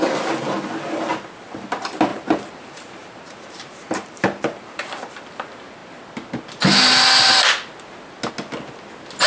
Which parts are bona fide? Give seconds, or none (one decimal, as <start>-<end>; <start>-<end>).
0.0-2.1; 5.2-9.3